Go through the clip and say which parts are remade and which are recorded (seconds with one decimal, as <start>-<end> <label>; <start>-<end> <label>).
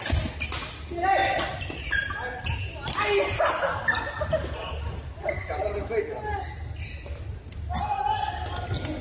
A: 0.0-9.0 recorded